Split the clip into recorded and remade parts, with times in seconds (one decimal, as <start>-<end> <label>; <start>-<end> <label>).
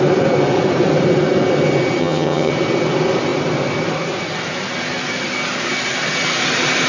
0.0-2.0 recorded; 2.0-2.5 remade; 2.5-6.9 recorded